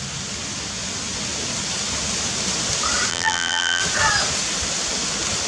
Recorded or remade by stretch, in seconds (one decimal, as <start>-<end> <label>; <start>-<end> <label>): 0.0-3.1 recorded; 3.1-3.8 remade; 3.8-5.5 recorded